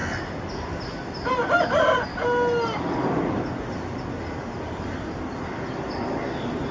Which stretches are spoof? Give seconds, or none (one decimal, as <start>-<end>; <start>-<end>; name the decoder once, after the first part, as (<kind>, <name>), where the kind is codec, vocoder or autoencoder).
none

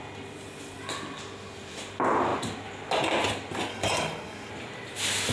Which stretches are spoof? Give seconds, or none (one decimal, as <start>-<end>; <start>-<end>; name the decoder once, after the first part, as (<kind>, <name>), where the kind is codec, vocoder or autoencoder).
3.7-4.5 (codec, DAC)

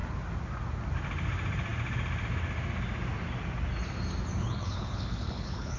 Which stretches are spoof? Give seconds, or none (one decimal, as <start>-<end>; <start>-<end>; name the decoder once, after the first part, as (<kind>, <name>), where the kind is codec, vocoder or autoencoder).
4.4-5.8 (codec, HILCodec)

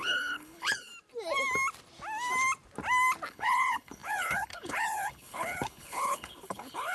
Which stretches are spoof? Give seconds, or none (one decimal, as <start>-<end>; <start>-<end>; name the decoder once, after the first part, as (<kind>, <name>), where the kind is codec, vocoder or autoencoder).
0.0-0.9 (codec, HILCodec); 3.3-6.9